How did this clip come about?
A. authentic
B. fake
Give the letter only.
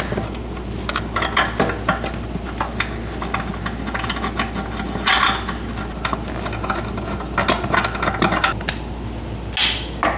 A